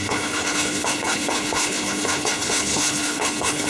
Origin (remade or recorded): remade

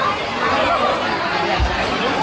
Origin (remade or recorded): recorded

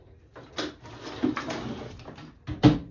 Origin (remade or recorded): recorded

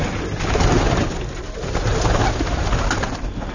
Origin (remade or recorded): recorded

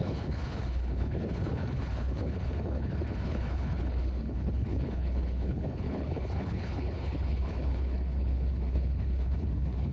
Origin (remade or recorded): remade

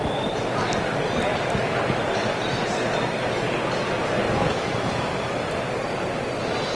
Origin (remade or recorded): recorded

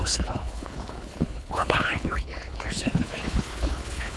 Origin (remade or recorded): remade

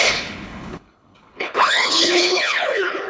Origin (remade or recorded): remade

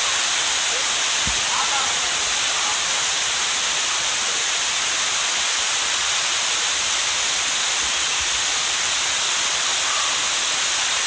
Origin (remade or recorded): recorded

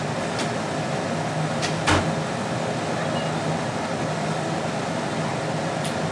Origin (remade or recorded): recorded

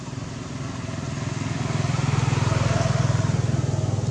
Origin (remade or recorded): recorded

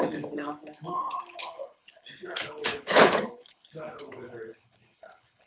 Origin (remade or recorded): remade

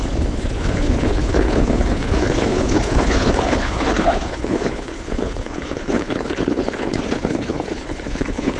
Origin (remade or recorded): remade